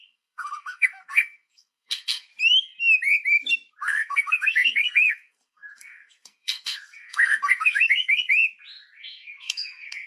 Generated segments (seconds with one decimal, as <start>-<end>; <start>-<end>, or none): 0.0-2.3; 3.8-8.3; 9.0-10.1